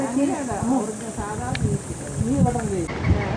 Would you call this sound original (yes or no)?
yes